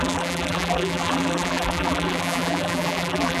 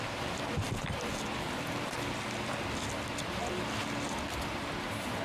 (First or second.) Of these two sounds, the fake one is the first